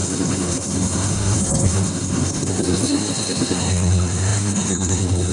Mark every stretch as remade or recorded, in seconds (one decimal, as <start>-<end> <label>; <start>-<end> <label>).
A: 0.0-5.3 remade